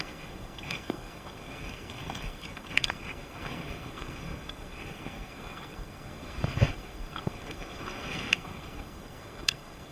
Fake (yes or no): yes